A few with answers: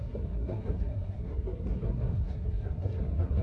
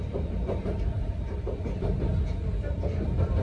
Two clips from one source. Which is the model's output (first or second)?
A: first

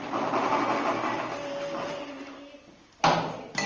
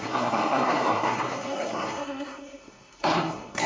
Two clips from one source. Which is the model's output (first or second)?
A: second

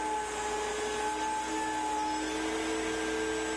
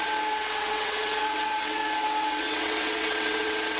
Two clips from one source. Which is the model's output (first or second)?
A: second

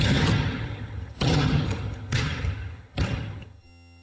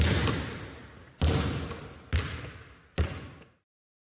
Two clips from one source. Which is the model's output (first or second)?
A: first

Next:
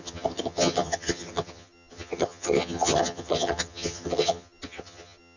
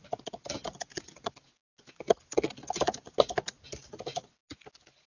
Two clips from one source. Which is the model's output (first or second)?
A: first